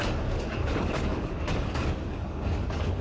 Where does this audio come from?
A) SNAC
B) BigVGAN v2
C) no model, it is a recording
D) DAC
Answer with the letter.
D